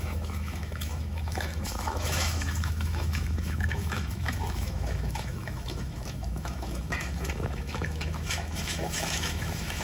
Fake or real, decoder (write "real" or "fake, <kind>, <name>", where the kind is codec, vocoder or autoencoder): fake, autoencoder, DAC-VAE